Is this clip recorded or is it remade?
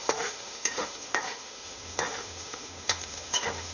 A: remade